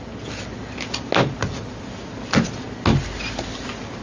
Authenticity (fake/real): real